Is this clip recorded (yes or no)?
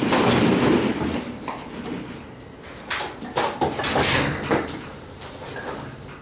yes